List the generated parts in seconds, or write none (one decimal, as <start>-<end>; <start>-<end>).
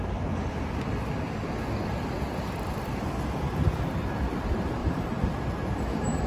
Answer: 4.8-5.4